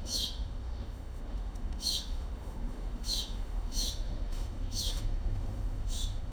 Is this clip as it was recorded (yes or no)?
no